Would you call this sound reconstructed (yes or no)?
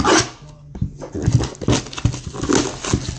no